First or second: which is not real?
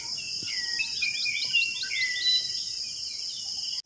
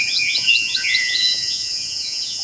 second